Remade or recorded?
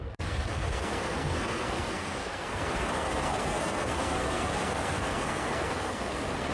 remade